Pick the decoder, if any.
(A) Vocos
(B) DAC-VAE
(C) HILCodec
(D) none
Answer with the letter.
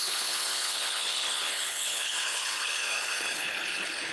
C